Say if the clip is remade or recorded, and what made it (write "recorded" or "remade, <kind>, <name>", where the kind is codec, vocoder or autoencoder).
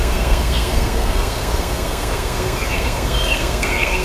remade, codec, SNAC